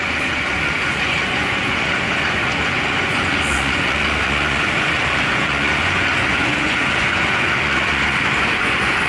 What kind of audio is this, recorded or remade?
remade